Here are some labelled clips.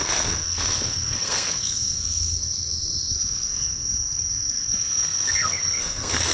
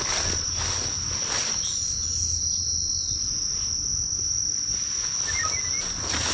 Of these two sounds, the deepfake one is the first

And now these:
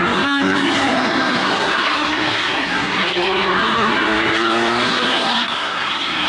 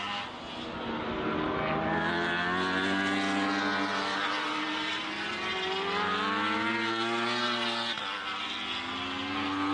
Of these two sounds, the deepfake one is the first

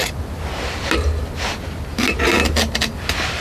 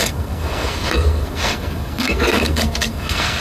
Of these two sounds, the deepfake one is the second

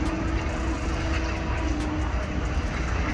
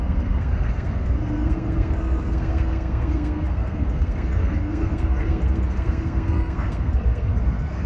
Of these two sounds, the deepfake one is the second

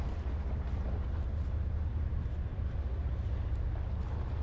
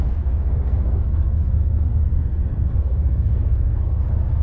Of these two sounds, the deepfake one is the second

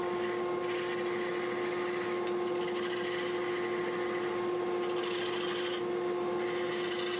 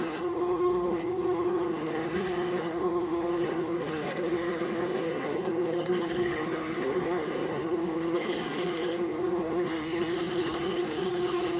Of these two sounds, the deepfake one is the second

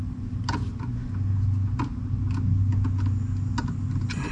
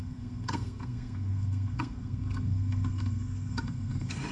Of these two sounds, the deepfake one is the second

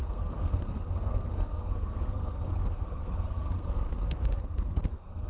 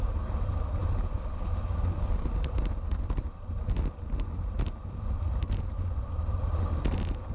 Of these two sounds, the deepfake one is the first